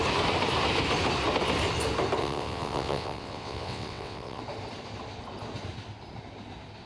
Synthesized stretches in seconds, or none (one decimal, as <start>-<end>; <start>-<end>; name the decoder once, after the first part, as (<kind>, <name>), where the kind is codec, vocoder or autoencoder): 2.2-4.4 (vocoder, WaveNeXt)